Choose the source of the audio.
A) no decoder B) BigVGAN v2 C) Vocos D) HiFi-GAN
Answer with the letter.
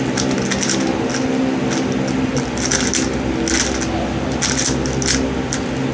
A